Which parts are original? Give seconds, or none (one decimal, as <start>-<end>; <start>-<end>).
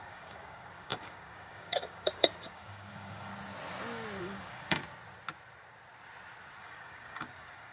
3.3-4.2; 4.8-6.6